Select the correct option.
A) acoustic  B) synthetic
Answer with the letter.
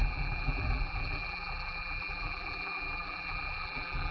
B